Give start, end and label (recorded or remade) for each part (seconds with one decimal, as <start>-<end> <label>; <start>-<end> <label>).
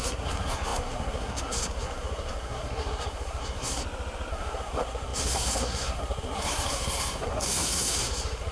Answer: 0.0-3.8 remade; 3.8-4.3 recorded; 4.3-8.5 remade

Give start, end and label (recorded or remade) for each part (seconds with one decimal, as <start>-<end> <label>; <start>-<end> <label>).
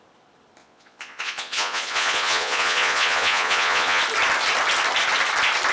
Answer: 0.0-0.6 recorded; 0.6-4.0 remade; 4.0-5.7 recorded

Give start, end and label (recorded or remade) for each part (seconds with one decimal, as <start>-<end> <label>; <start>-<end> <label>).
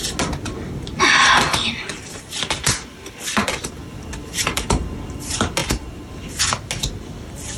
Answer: 0.0-2.6 recorded; 2.6-4.6 remade; 4.6-5.6 recorded; 5.6-6.1 remade; 6.1-7.6 recorded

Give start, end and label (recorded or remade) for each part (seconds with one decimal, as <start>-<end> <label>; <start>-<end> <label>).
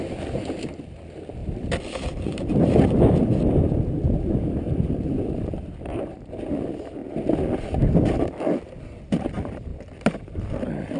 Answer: 0.0-7.0 remade; 7.0-9.1 recorded; 9.1-9.7 remade; 9.7-10.6 recorded; 10.6-11.0 remade